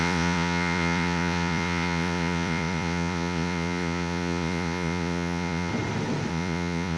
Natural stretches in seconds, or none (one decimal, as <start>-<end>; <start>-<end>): 5.7-6.3